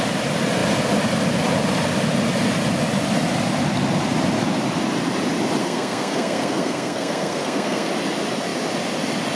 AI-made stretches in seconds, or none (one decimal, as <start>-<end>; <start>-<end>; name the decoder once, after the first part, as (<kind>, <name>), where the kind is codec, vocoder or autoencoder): 5.6-7.9 (codec, SNAC)